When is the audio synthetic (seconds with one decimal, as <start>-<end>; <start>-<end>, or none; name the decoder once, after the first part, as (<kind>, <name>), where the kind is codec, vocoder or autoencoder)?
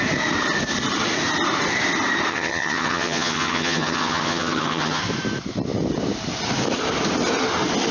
2.3-5.0 (vocoder, HiFi-GAN)